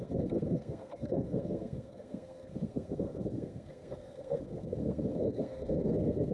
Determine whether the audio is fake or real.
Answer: fake